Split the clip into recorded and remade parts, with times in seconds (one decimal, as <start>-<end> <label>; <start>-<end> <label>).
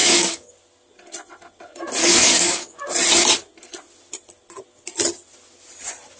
0.0-0.5 remade; 0.5-2.0 recorded; 2.0-2.8 remade; 2.8-6.2 recorded